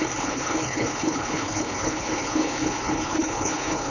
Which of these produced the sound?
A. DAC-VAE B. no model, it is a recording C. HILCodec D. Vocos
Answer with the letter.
C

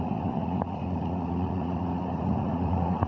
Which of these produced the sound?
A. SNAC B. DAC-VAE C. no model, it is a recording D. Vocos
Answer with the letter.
D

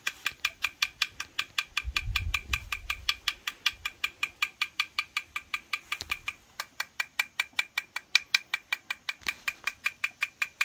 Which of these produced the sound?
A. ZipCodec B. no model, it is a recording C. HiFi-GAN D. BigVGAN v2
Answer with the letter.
B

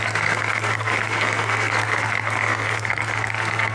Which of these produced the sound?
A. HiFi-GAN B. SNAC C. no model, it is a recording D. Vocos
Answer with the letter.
B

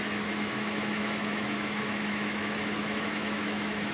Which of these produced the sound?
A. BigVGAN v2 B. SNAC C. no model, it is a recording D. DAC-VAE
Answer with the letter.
D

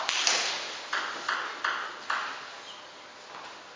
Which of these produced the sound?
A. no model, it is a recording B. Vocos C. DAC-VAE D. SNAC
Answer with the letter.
A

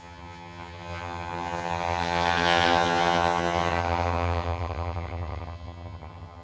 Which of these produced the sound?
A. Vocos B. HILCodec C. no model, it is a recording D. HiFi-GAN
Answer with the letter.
D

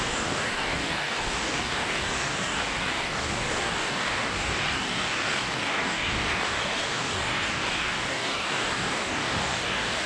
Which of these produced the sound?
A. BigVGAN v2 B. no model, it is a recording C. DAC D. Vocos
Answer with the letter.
C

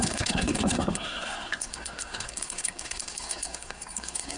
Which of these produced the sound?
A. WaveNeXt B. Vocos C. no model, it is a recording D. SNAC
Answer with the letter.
D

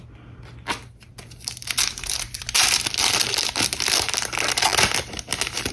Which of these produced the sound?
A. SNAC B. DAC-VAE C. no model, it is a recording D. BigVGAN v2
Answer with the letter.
C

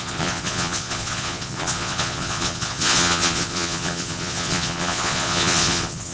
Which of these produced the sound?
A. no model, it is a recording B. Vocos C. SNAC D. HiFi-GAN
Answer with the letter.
B